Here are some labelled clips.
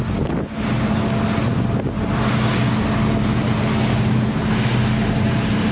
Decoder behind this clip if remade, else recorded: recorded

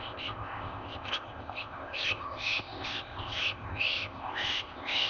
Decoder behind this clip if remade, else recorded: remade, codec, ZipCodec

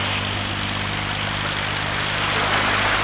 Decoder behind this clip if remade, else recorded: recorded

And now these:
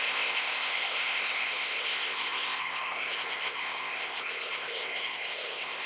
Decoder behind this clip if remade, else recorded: remade, codec, ZipCodec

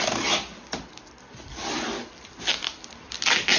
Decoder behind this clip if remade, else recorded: recorded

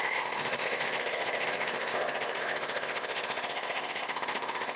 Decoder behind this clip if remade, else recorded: remade, codec, ZipCodec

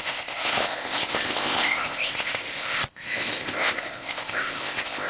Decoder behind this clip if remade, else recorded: remade, codec, ZipCodec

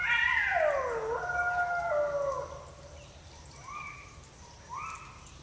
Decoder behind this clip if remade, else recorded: recorded